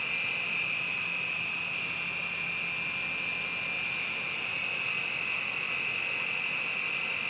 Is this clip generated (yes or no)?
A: no